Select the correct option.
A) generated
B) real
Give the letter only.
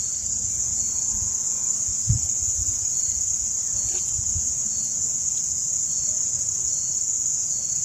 A